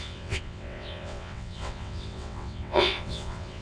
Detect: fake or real fake